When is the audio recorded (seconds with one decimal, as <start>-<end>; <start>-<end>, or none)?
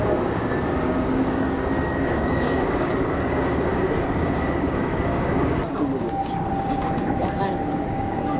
none